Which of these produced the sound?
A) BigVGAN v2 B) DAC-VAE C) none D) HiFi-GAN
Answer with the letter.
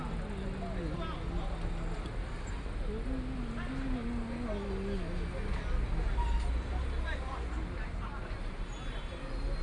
C